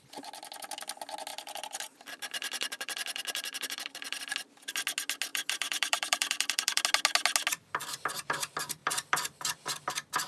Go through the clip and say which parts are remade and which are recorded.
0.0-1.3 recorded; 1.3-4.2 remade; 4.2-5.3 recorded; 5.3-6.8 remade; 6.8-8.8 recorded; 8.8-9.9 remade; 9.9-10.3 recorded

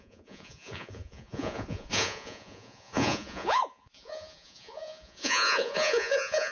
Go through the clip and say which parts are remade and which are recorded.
0.0-6.5 remade

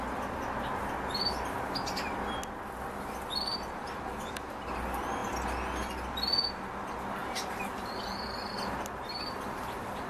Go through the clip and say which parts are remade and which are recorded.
0.0-7.2 recorded; 7.2-10.1 remade

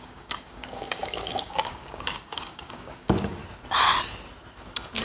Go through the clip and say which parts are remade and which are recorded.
0.0-3.4 remade; 3.4-5.0 recorded

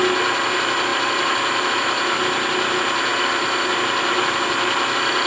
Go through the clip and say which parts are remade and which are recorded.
0.0-5.3 recorded

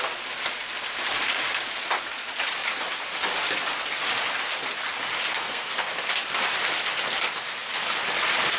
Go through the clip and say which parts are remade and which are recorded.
0.0-5.3 recorded; 5.3-6.0 remade; 6.0-8.6 recorded